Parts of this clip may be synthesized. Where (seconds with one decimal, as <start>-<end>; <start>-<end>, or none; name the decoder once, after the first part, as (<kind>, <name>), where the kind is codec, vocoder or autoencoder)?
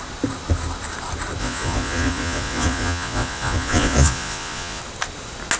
1.4-4.8 (vocoder, Vocos)